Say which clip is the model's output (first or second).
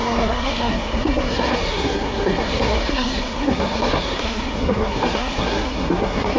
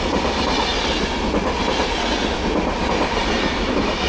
first